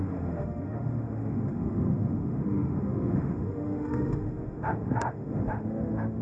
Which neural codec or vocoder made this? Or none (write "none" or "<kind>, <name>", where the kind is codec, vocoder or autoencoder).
autoencoder, DAC-VAE